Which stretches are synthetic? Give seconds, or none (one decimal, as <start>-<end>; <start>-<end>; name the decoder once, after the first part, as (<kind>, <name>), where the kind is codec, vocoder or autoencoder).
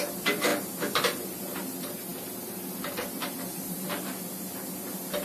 none